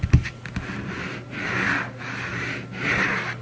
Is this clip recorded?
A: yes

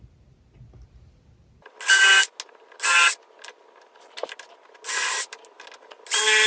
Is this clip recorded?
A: yes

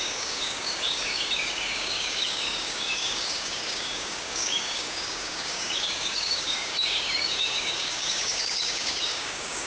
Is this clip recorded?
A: no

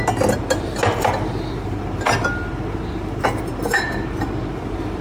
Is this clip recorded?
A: yes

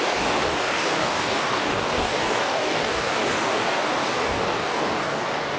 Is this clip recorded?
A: no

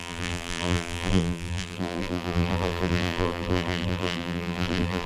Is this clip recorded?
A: no